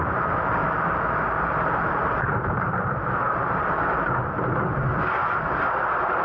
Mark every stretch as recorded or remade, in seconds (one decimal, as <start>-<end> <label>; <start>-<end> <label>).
0.0-3.0 remade; 3.0-5.4 recorded; 5.4-6.2 remade